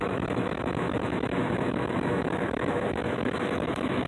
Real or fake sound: fake